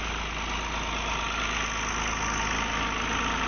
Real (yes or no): yes